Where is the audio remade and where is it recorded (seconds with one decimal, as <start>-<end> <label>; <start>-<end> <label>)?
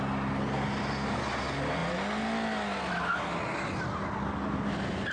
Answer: 0.0-5.1 recorded